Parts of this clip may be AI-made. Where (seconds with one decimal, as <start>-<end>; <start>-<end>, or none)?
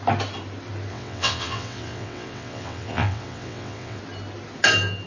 0.9-4.0